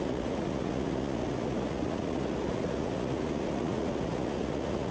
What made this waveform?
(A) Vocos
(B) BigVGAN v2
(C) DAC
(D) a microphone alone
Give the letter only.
A